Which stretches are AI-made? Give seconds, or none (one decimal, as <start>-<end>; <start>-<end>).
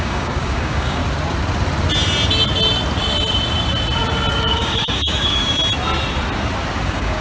0.0-1.0; 4.3-5.6; 6.8-7.2